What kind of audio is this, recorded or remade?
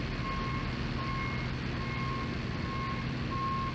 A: recorded